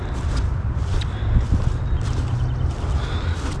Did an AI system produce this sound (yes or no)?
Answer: no